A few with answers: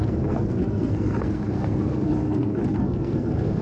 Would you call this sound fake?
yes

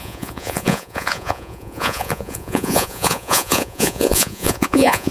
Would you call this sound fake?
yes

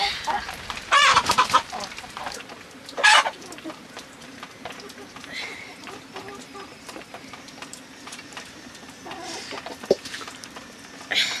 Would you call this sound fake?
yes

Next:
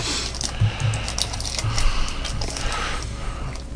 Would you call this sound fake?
no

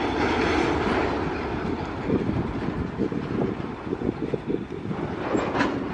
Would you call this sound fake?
no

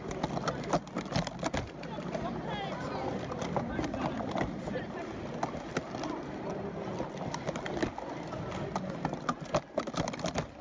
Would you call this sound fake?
no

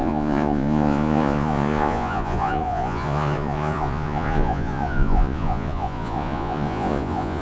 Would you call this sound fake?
yes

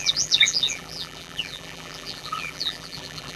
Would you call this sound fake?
yes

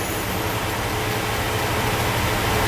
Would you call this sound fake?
no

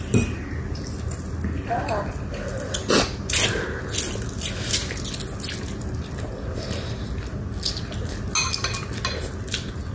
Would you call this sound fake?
no